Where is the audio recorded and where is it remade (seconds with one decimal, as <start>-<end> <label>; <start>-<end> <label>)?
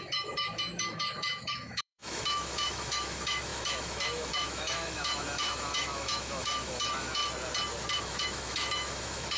0.0-7.2 remade; 7.2-8.0 recorded; 8.0-9.4 remade